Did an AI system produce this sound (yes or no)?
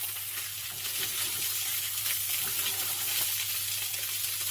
no